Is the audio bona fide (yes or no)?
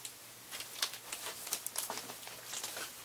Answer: yes